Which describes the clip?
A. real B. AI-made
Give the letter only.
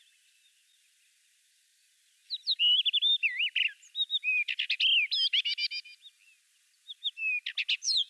A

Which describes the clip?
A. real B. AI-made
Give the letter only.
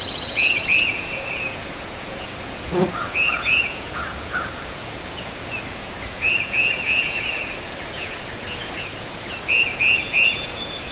B